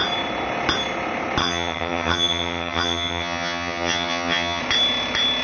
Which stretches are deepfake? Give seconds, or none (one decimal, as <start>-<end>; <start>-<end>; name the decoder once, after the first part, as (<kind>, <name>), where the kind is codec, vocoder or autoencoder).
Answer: 1.4-4.6 (vocoder, HiFi-GAN)